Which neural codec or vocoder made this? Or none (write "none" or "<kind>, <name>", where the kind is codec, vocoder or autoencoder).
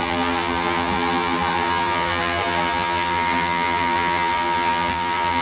vocoder, BigVGAN v2